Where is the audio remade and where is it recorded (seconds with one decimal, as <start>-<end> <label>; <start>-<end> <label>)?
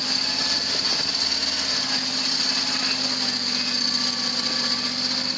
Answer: 0.0-5.4 recorded